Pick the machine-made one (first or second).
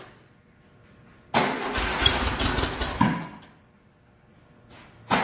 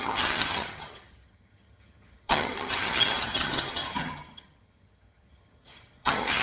second